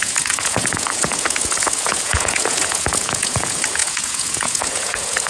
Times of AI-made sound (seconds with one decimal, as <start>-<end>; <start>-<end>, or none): 0.0-5.3